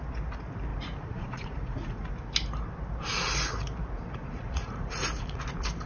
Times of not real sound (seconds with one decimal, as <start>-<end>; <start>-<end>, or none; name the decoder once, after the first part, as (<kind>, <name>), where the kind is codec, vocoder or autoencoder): 0.7-2.1 (vocoder, Vocos); 4.2-5.4